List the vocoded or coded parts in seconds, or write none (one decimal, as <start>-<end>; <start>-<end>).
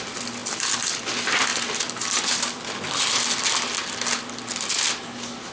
none